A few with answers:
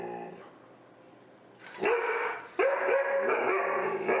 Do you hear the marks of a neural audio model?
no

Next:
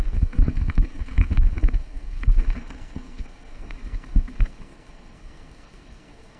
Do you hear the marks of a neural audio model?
yes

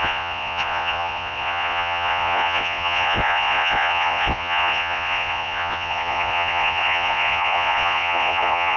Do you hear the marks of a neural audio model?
yes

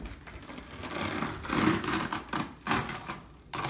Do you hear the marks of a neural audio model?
no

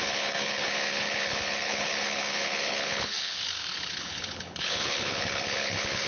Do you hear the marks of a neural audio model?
yes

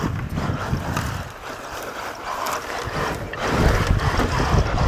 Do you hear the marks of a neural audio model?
no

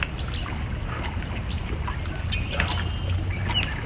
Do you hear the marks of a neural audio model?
no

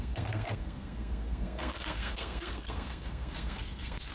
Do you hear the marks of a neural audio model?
yes